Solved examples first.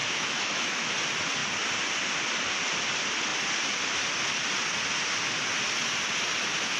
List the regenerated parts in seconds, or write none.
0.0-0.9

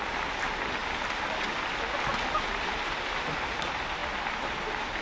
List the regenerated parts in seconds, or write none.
none

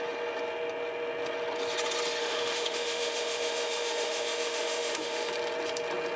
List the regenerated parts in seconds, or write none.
2.2-5.3

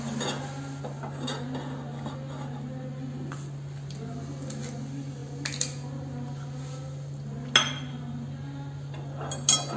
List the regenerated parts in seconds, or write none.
none

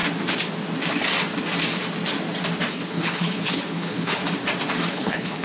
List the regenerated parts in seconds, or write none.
2.7-4.2; 4.9-5.4

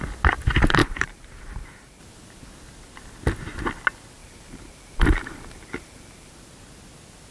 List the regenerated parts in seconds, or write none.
0.8-2.0; 4.2-6.3

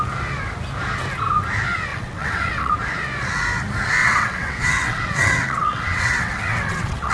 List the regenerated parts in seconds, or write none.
1.9-2.7; 4.0-7.1

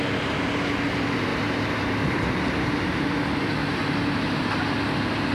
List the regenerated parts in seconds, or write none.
1.3-3.1; 3.6-4.6